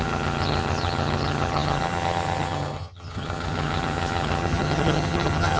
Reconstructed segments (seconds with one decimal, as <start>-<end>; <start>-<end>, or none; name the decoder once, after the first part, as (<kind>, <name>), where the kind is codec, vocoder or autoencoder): 0.0-5.6 (vocoder, HiFi-GAN)